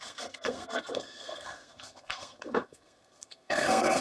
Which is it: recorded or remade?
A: remade